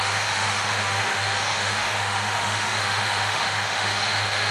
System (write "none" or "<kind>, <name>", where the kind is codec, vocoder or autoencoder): autoencoder, DAC-VAE